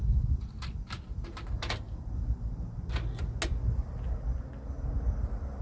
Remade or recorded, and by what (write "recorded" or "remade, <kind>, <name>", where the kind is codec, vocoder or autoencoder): recorded